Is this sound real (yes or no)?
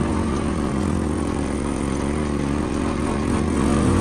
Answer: no